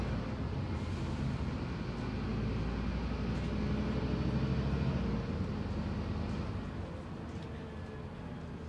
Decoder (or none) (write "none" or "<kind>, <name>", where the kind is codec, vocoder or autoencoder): none